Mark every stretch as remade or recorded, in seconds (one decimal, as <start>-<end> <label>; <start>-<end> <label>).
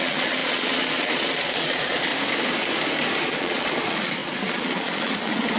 0.0-2.1 remade; 2.1-3.2 recorded; 3.2-5.6 remade